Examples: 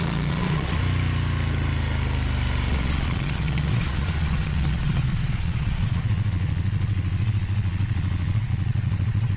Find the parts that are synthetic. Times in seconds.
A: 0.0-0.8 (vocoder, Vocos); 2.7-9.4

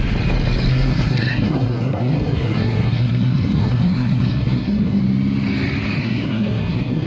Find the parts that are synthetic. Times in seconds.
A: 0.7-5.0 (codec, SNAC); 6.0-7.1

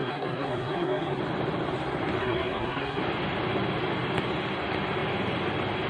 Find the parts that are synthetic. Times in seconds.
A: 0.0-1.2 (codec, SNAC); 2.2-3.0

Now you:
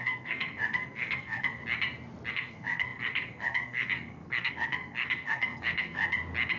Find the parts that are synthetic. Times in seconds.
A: 0.0-1.6 (codec, SNAC); 2.3-6.0

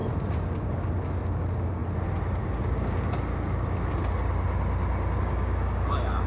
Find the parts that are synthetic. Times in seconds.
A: 0.6-1.8 (codec, DAC); 2.6-3.3; 5.2-6.3